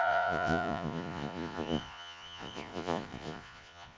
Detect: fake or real fake